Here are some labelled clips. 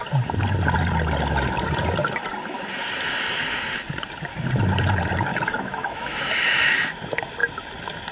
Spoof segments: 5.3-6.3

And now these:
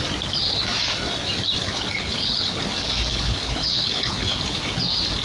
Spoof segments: 1.6-2.6; 3.1-4.6

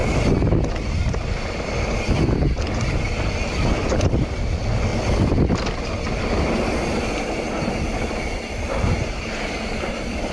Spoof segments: none

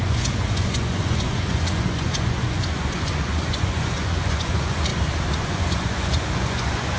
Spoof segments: 0.0-4.9; 5.4-7.0

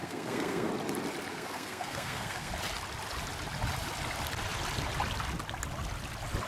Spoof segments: 0.0-0.7; 1.3-2.5

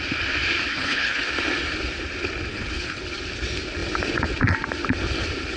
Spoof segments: 0.7-1.2; 2.5-3.0

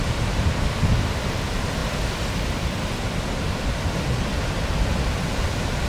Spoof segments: 0.0-1.8; 3.5-4.3; 5.3-5.9